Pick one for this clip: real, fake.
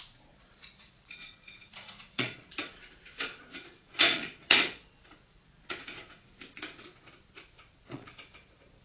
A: fake